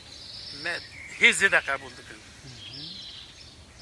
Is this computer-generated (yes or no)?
no